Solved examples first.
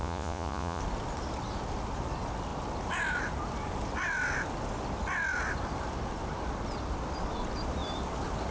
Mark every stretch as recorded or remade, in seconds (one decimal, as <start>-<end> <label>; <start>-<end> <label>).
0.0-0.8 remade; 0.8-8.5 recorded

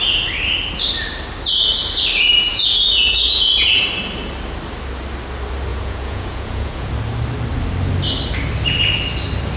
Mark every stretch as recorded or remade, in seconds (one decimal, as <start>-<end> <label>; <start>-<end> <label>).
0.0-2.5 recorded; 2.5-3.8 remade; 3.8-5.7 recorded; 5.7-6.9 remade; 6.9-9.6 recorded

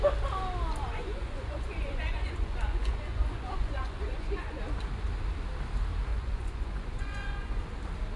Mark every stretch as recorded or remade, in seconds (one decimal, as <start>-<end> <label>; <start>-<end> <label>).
0.0-0.9 recorded; 0.9-4.6 remade; 4.6-6.1 recorded; 6.1-7.6 remade; 7.6-8.2 recorded

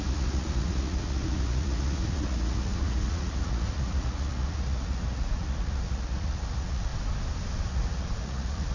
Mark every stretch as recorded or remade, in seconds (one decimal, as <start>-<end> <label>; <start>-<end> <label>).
0.0-6.9 remade; 6.9-7.7 recorded; 7.7-8.7 remade